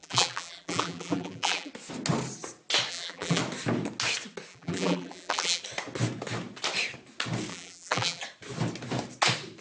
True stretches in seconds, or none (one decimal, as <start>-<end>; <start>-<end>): 1.7-2.9; 3.4-4.5; 5.6-7.5; 8.2-9.6